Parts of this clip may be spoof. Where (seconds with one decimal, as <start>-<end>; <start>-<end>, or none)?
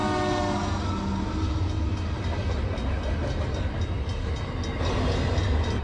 none